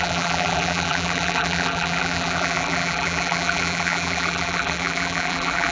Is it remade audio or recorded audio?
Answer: remade